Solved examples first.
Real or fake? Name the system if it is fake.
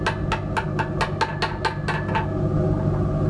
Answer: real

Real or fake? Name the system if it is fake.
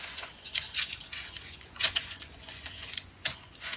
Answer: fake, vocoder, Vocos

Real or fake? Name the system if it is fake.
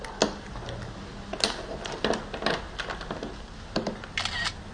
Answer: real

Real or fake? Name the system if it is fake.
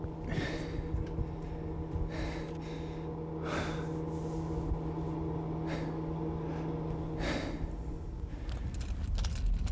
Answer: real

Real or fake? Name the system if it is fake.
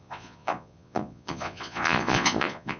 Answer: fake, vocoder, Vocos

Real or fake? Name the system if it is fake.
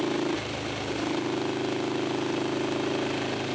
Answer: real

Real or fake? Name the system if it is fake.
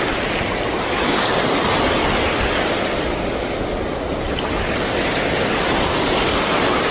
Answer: real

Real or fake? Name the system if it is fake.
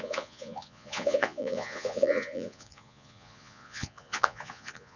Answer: fake, vocoder, Vocos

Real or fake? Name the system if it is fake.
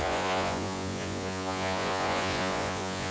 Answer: fake, vocoder, Vocos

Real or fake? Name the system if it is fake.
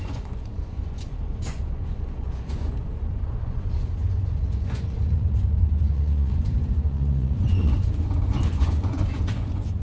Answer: fake, vocoder, Vocos